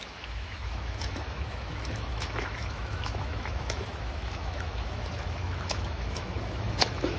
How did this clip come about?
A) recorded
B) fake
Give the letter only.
B